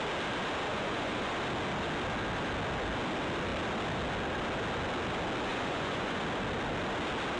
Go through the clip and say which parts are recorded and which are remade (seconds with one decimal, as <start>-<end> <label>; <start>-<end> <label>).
0.0-0.7 recorded; 0.7-1.3 remade; 1.3-5.5 recorded; 5.5-6.2 remade; 6.2-7.4 recorded